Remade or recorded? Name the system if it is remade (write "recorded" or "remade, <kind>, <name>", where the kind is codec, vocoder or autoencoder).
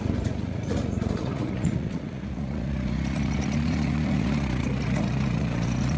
remade, vocoder, Vocos